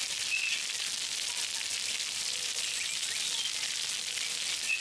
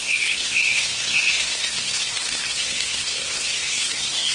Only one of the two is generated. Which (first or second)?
second